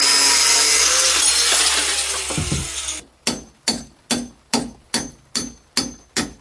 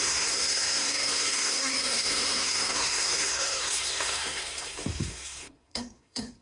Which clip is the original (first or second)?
first